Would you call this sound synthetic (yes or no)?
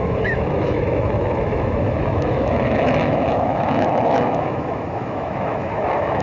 yes